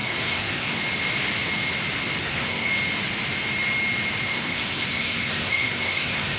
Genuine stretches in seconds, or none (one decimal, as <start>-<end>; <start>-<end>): 0.8-2.2; 2.7-4.3